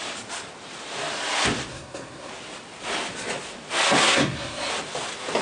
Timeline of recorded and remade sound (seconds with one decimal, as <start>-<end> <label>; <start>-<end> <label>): 0.0-1.7 recorded; 1.7-2.3 remade; 2.3-4.0 recorded; 4.0-4.7 remade; 4.7-5.4 recorded